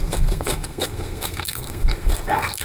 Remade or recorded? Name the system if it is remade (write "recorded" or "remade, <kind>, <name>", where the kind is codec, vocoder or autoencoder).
remade, codec, SNAC